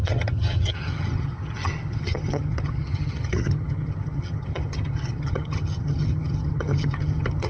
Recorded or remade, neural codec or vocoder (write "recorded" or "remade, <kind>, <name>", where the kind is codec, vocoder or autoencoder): remade, vocoder, HiFi-GAN